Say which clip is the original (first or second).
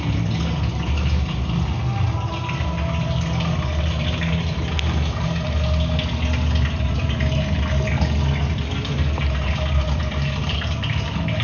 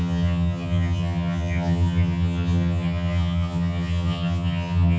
first